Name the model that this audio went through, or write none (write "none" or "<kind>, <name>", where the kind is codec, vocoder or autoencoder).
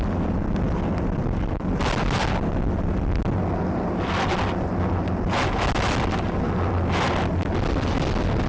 none